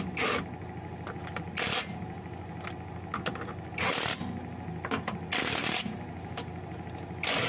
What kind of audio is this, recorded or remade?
recorded